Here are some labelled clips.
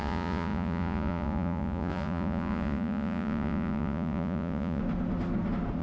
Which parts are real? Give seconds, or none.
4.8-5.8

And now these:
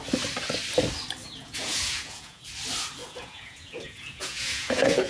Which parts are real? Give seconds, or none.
0.0-1.2; 2.4-3.0

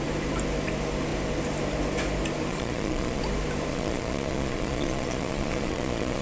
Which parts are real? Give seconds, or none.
0.0-2.5; 3.2-3.7